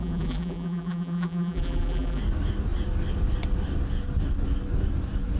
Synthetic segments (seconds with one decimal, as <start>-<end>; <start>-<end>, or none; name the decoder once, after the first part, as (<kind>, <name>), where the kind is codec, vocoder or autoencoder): 0.0-2.2 (vocoder, BigVGAN v2)